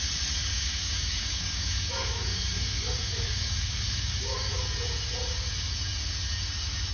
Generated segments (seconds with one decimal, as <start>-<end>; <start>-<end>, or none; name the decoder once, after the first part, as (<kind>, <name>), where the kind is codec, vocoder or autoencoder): 0.5-4.6 (codec, DAC)